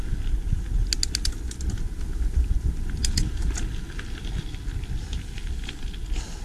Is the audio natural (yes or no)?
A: yes